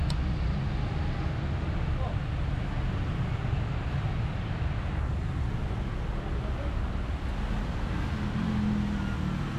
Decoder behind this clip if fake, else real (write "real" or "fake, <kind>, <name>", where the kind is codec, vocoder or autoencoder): real